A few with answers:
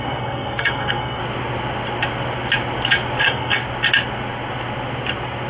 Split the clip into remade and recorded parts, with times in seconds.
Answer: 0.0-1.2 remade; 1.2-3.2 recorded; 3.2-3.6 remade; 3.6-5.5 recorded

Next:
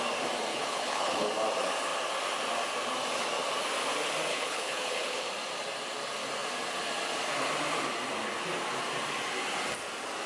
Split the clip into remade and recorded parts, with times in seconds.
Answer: 0.0-0.5 recorded; 0.5-1.3 remade; 1.3-4.3 recorded; 4.3-5.3 remade; 5.3-10.3 recorded

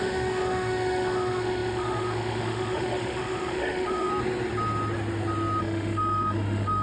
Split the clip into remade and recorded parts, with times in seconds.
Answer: 0.0-4.1 remade; 4.1-5.6 recorded; 5.6-6.8 remade

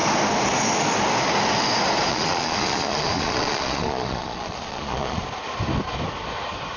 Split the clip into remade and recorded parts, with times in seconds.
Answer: 0.0-2.1 recorded; 2.1-5.2 remade; 5.2-6.8 recorded

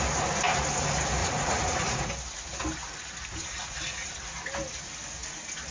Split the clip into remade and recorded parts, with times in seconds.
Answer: 0.0-1.2 recorded; 1.2-2.1 remade; 2.1-3.4 recorded; 3.4-4.1 remade; 4.1-5.7 recorded

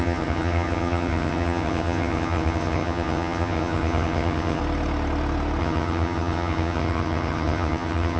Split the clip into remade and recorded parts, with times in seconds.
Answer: 0.0-4.6 remade; 4.6-5.6 recorded; 5.6-8.2 remade

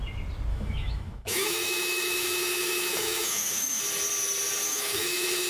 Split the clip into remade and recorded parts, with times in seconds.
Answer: 0.0-0.5 recorded; 0.5-3.8 remade; 3.8-4.7 recorded; 4.7-5.5 remade

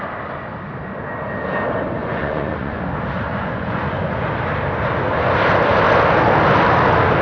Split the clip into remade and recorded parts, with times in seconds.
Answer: 0.0-2.0 recorded; 2.0-2.8 remade; 2.8-3.3 recorded; 3.3-4.3 remade; 4.3-7.2 recorded